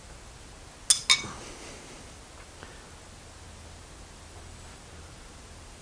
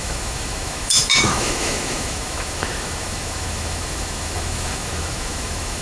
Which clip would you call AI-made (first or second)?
second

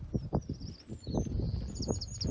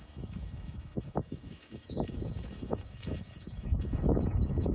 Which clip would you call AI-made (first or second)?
second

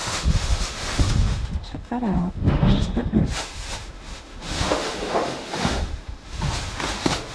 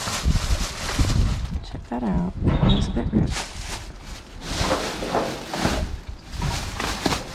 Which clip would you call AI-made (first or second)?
first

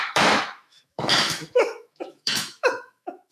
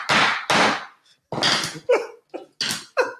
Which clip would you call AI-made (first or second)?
first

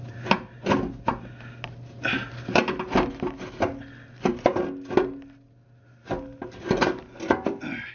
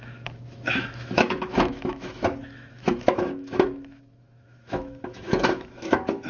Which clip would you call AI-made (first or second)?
second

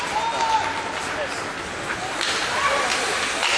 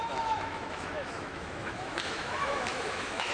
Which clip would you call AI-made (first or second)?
second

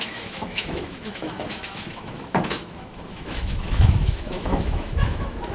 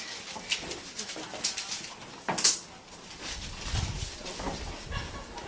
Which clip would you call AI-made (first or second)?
first